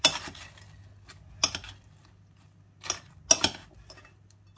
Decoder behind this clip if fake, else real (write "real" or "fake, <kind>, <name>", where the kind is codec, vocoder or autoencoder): real